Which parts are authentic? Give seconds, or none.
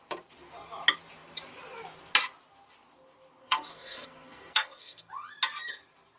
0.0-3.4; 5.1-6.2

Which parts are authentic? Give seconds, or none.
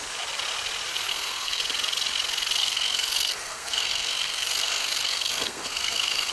0.0-1.1; 1.6-2.6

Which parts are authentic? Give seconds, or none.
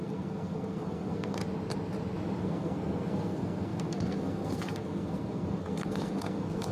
1.4-2.4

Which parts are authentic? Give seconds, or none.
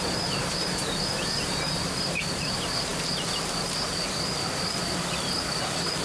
0.0-6.0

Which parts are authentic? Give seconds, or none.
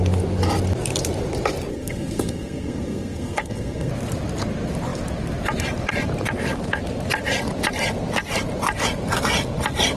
0.0-1.7; 3.9-10.0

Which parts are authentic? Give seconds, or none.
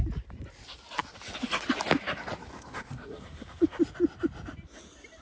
0.0-2.5; 3.8-5.2